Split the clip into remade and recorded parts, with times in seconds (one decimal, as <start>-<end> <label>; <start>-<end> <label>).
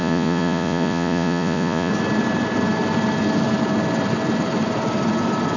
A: 0.0-1.9 remade; 1.9-5.6 recorded